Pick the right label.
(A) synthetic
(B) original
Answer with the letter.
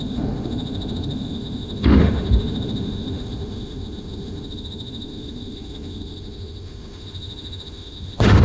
A